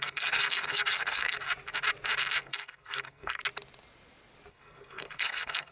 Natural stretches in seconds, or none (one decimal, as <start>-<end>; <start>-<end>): 1.4-2.4; 3.4-4.5